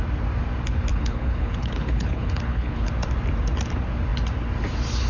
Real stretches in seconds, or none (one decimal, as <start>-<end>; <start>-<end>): 0.0-0.9; 2.9-5.1